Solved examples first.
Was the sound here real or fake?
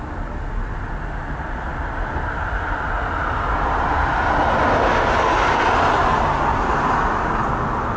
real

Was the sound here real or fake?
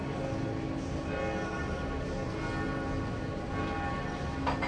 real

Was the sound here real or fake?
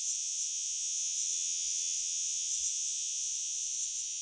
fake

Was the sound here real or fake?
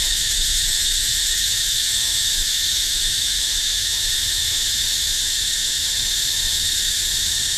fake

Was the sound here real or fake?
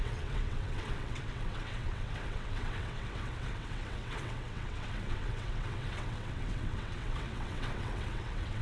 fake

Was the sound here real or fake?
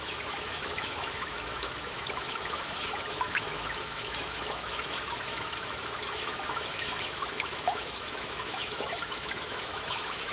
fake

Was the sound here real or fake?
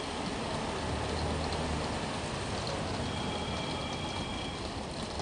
real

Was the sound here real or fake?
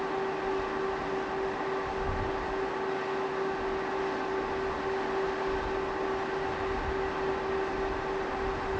real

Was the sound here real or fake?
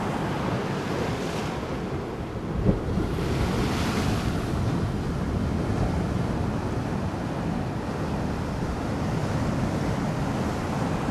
real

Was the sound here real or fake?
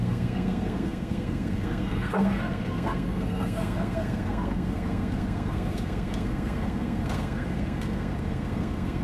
fake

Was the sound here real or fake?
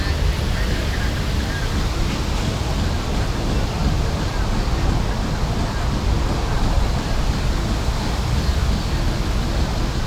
real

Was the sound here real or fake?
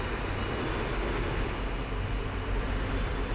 real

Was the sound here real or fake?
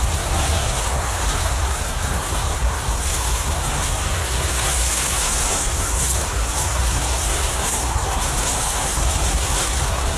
fake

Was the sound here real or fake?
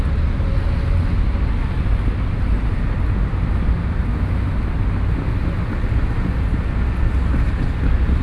real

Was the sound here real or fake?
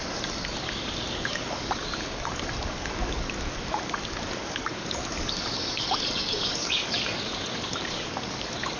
fake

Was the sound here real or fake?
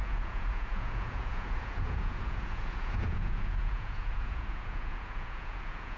fake